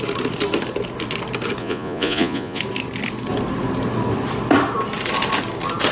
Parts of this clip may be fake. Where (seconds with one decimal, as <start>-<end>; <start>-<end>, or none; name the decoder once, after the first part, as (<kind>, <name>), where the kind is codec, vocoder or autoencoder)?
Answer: 1.6-2.6 (vocoder, Vocos)